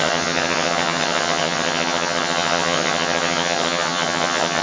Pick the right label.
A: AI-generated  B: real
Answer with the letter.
A